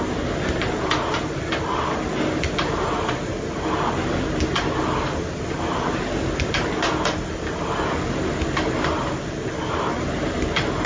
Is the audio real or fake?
real